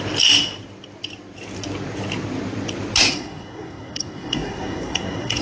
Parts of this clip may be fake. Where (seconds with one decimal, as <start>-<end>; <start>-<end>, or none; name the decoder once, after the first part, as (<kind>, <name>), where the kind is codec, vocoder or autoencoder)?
3.1-5.4 (codec, SNAC)